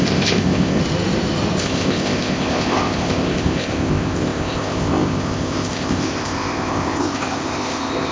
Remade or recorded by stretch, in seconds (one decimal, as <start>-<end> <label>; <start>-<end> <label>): 0.0-0.8 remade; 0.8-1.6 recorded; 1.6-8.1 remade